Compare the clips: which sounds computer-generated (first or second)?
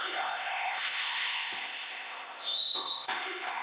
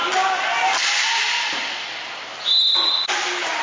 first